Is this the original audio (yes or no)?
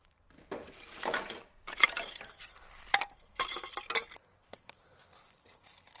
no